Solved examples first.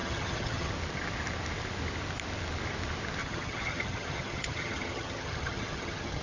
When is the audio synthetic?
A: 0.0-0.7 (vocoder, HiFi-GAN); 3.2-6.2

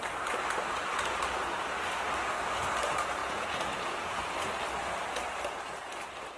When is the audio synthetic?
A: 3.2-4.2 (vocoder, Vocos)